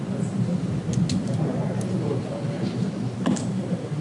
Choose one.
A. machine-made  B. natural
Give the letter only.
B